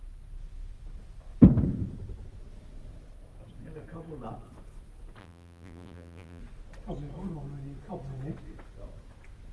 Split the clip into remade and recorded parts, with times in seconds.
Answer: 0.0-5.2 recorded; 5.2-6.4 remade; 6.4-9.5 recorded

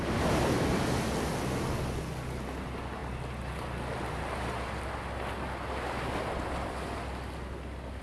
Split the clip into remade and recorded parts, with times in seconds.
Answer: 0.0-8.0 recorded

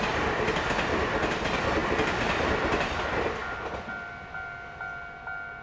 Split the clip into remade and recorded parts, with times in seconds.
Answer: 0.0-5.6 recorded

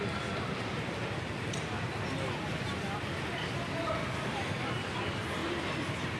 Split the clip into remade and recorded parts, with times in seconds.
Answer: 0.0-4.0 recorded; 4.0-4.6 remade; 4.6-5.4 recorded; 5.4-6.2 remade

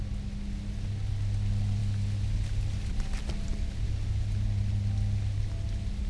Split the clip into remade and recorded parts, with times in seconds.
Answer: 0.0-6.1 recorded